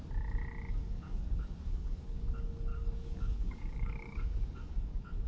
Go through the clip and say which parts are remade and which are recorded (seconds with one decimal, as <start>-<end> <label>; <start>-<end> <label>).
0.0-0.8 recorded; 0.8-2.3 remade; 2.3-2.7 recorded; 2.7-5.3 remade